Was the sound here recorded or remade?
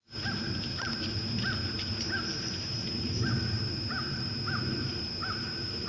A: recorded